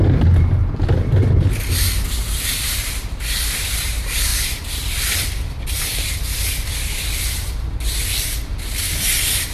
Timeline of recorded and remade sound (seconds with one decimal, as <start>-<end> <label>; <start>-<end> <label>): 0.0-4.3 recorded; 4.3-8.7 remade; 8.7-9.5 recorded